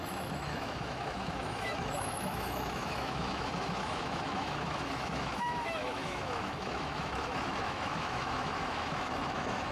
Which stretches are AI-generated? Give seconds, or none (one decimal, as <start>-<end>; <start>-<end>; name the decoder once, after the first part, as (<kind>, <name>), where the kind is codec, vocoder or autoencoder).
0.0-9.7 (autoencoder, DAC-VAE)